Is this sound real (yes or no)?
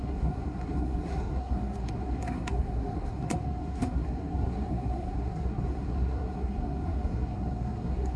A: no